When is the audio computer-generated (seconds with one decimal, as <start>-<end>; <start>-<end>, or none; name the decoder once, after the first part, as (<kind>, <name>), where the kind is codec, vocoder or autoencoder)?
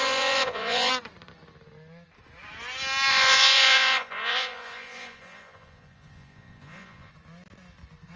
0.0-0.9 (vocoder, Vocos); 3.1-7.1